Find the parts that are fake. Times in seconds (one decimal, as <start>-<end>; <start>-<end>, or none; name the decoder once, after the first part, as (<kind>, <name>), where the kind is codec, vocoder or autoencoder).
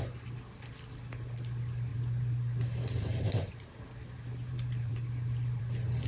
1.9-5.6 (vocoder, BigVGAN v2)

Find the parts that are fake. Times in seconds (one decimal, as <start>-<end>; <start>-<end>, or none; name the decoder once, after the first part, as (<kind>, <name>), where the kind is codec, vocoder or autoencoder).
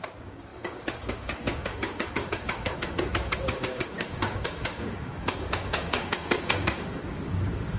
0.0-7.8 (codec, DAC)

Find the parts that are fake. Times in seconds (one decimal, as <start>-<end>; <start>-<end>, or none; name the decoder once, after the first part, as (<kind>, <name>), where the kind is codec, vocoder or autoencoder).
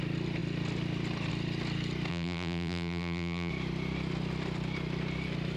2.1-3.5 (vocoder, BigVGAN v2)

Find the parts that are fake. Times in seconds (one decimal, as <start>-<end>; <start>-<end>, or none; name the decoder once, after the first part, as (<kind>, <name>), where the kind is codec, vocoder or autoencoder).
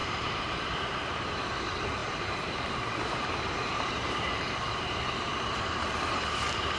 0.0-1.5 (vocoder, BigVGAN v2); 2.0-6.1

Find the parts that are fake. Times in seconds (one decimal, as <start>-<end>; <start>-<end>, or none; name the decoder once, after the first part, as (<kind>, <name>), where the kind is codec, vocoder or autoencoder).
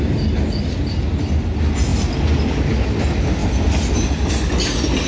none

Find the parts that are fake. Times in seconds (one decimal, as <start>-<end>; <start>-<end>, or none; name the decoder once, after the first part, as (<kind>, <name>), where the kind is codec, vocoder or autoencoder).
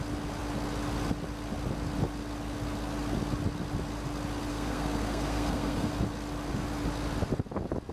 4.5-5.9 (codec, SNAC)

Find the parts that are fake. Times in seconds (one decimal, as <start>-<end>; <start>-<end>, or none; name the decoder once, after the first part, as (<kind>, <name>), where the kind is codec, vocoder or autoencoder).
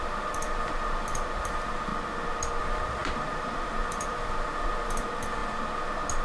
0.0-1.9 (vocoder, BigVGAN v2); 2.6-5.4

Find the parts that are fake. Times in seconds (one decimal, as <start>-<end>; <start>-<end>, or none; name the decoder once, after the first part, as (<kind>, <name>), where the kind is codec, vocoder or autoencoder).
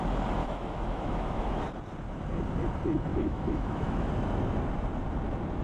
0.4-1.6 (autoencoder, DAC-VAE); 3.1-4.1